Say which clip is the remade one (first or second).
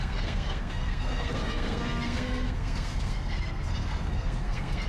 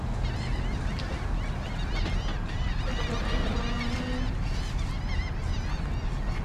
first